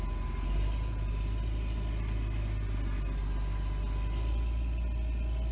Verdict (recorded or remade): recorded